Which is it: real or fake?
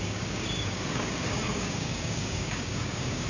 fake